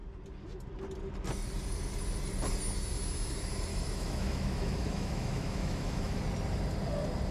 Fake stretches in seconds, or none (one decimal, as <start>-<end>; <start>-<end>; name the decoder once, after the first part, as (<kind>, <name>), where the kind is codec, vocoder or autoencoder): 3.7-6.2 (autoencoder, DAC-VAE)